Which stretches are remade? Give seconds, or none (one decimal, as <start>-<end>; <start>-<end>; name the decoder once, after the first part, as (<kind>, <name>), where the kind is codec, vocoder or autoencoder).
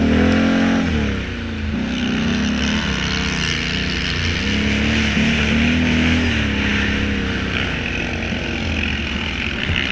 none